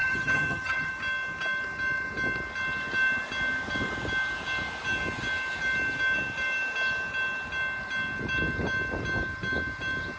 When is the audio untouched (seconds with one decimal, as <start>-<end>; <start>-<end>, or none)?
0.9-10.2